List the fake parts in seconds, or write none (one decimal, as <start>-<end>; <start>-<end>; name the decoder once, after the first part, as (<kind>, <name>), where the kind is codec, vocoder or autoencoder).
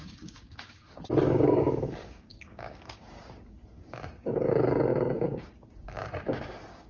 0.0-6.9 (codec, DAC)